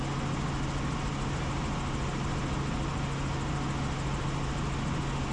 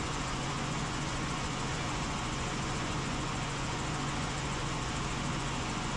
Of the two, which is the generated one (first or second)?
second